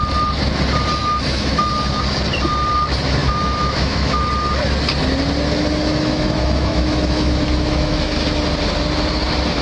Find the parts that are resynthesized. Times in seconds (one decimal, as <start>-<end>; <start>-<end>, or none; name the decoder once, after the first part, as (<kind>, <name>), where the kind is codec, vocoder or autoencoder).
1.0-1.7 (autoencoder, DAC-VAE); 3.2-4.2; 5.8-8.1